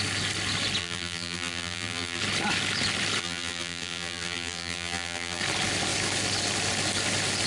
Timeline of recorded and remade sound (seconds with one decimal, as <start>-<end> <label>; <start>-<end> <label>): 0.0-0.8 recorded; 0.8-2.2 remade; 2.2-3.2 recorded; 3.2-5.4 remade; 5.4-7.5 recorded